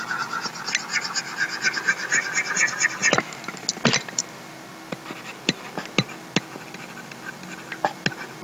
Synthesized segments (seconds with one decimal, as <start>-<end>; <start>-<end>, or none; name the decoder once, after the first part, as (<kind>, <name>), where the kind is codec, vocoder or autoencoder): none